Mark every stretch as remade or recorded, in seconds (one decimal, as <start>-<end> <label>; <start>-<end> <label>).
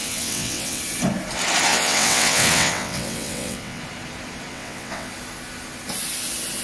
0.0-0.8 remade; 0.8-1.7 recorded; 1.7-3.8 remade; 3.8-4.5 recorded; 4.5-5.1 remade; 5.1-6.6 recorded